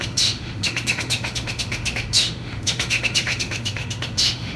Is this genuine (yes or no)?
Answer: no